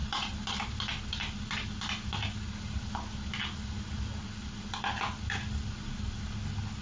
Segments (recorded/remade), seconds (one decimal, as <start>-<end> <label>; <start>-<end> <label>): 0.0-6.8 recorded